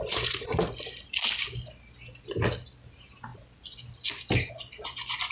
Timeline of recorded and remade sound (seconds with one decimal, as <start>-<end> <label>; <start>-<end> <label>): 0.0-5.3 recorded